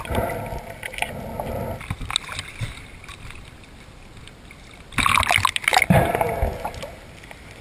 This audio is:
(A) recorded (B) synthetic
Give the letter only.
A